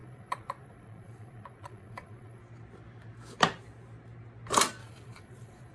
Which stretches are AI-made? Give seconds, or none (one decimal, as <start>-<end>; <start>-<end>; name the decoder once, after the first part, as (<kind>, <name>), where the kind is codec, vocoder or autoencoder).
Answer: 0.0-2.4 (vocoder, Vocos); 4.8-5.7

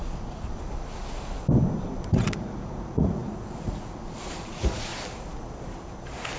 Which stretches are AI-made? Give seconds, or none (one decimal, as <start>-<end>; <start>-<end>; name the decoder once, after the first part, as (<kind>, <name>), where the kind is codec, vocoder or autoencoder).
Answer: 0.0-0.5 (vocoder, Vocos); 2.1-4.9

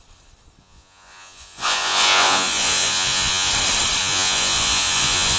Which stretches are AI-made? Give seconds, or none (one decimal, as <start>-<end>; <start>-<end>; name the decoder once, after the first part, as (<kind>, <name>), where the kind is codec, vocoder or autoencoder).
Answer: 0.6-3.5 (vocoder, Vocos); 4.0-5.4